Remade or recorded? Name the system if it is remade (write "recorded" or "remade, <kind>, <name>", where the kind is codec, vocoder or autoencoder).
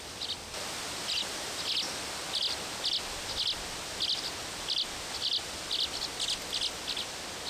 recorded